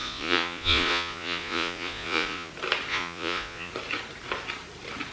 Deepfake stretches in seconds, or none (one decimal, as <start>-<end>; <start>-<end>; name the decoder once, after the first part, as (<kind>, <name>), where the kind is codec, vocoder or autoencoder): 0.0-2.5 (vocoder, Vocos); 2.9-3.7